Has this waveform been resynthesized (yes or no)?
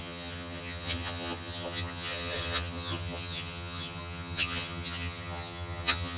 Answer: yes